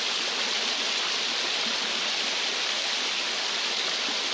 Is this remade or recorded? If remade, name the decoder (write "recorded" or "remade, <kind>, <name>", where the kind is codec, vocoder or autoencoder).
recorded